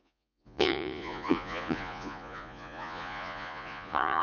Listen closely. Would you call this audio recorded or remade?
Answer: remade